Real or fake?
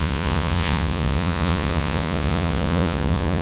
fake